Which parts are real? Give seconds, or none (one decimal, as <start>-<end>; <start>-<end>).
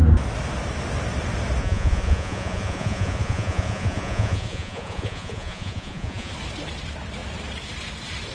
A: 0.0-1.6; 6.3-8.3